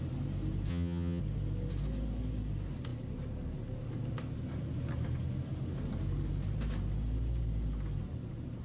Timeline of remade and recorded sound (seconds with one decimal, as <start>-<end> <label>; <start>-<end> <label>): 0.0-0.7 recorded; 0.7-1.2 remade; 1.2-8.6 recorded